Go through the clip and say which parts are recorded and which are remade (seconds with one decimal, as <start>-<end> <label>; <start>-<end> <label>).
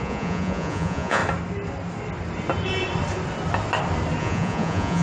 0.0-1.2 remade; 1.2-4.2 recorded; 4.2-5.0 remade